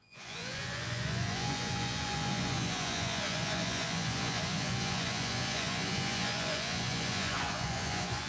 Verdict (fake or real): fake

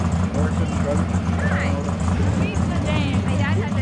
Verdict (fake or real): real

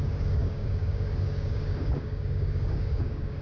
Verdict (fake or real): fake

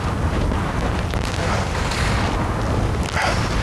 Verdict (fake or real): real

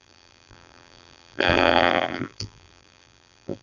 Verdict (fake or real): fake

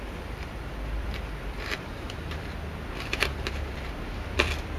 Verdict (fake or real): fake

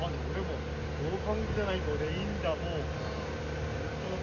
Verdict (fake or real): real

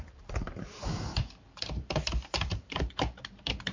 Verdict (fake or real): fake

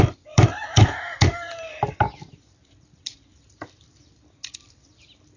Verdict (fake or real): fake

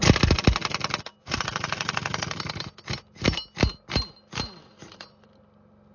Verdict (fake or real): real